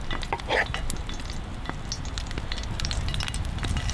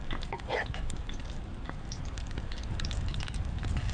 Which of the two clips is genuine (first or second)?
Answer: first